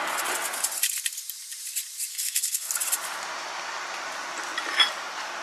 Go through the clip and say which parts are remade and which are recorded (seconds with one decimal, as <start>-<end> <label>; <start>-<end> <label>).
0.0-2.1 recorded; 2.1-2.7 remade; 2.7-5.4 recorded